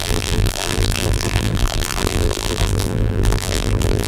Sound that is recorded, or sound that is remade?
remade